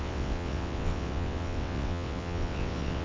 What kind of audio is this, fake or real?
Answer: fake